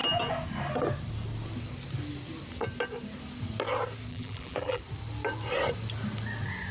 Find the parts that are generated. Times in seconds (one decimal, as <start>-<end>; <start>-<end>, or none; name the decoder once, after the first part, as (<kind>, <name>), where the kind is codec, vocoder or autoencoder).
4.1-4.8 (vocoder, BigVGAN v2)